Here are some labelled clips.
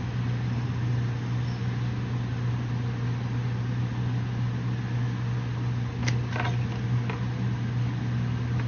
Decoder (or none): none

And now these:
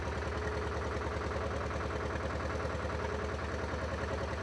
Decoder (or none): none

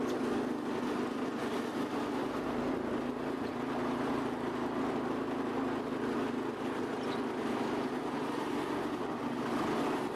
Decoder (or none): none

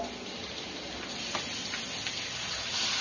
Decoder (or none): none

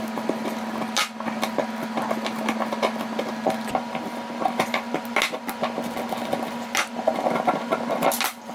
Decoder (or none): none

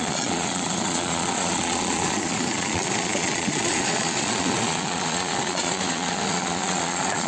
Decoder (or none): vocoder, Vocos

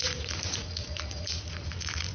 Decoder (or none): vocoder, Vocos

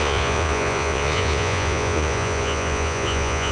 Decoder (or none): vocoder, Vocos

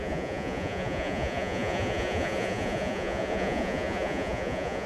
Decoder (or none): vocoder, Vocos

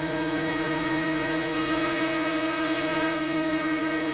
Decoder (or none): vocoder, Vocos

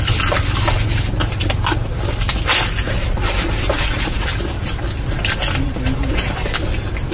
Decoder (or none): none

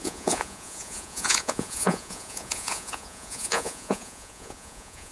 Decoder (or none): vocoder, Vocos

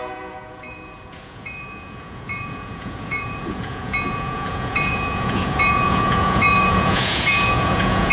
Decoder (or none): vocoder, Vocos